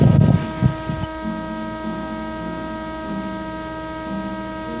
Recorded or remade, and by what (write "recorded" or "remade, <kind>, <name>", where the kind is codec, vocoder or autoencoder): recorded